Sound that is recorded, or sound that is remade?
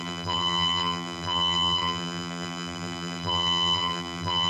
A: remade